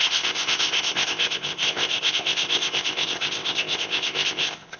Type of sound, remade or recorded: remade